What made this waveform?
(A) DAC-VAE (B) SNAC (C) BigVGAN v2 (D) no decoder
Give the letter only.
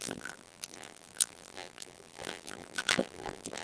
C